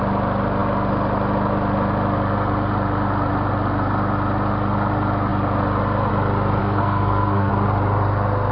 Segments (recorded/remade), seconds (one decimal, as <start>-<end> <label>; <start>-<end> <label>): 0.0-6.6 recorded; 6.6-7.5 remade; 7.5-8.5 recorded